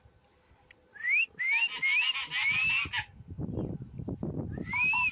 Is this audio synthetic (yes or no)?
no